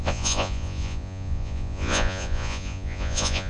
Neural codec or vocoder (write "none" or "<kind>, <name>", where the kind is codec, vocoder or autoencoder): vocoder, Vocos